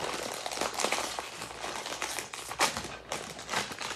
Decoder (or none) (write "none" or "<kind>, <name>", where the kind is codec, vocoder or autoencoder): none